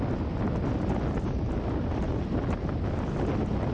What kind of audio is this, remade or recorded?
recorded